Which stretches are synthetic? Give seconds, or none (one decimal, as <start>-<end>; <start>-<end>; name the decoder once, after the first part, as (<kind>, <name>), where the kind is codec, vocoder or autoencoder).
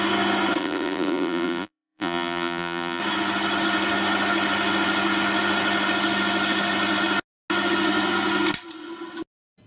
0.6-3.0 (vocoder, BigVGAN v2)